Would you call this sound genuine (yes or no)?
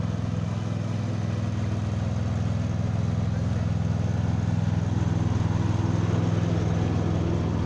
yes